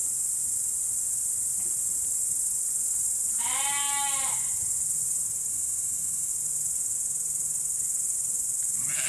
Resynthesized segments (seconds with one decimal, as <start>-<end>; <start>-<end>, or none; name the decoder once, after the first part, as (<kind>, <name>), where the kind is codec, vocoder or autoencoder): 5.5-6.3 (autoencoder, DAC-VAE)